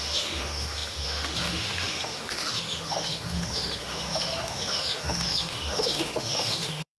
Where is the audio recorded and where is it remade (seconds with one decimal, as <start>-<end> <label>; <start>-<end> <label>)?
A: 0.0-7.0 remade